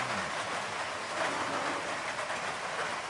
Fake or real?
real